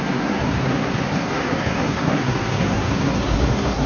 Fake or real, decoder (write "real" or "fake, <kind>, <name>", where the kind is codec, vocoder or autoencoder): fake, codec, SNAC